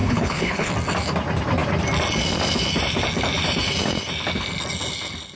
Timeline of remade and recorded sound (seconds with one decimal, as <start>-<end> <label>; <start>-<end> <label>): 0.0-0.7 remade; 0.7-5.4 recorded